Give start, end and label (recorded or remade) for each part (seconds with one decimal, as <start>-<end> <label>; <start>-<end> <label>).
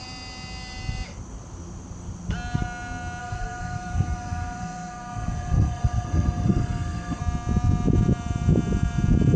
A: 0.0-3.2 recorded; 3.2-7.2 remade; 7.2-9.4 recorded